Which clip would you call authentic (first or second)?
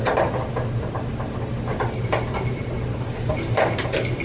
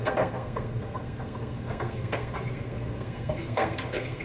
first